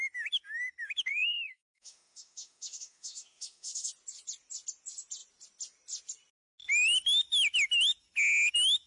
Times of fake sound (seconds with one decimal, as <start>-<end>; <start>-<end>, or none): 1.1-3.9